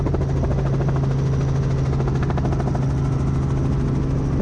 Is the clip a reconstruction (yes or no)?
no